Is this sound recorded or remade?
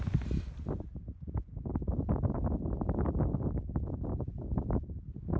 recorded